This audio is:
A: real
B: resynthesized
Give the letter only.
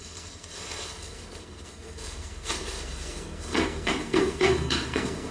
B